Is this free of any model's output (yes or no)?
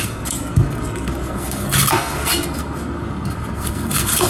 no